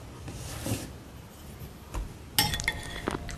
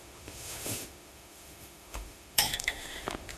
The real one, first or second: first